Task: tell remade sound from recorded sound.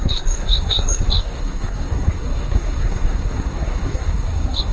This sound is remade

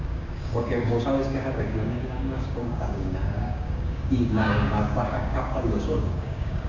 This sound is remade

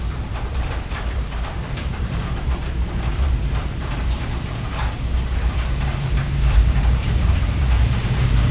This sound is remade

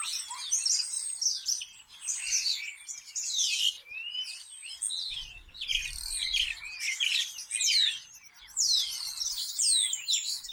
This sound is recorded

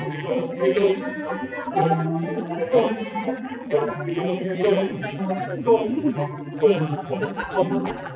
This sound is remade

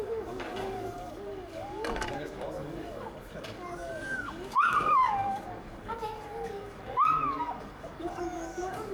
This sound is remade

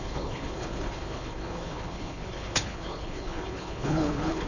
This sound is remade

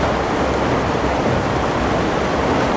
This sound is recorded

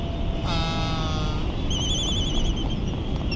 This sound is recorded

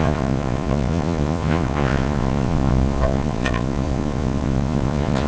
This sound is remade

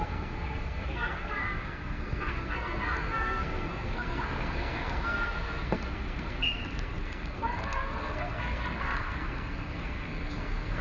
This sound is remade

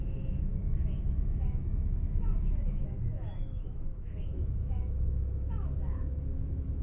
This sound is remade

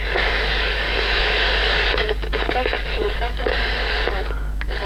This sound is remade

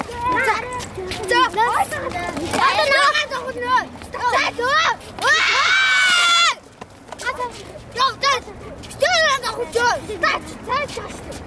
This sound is recorded